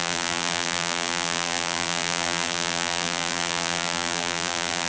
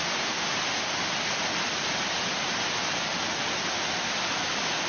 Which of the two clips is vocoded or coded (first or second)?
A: first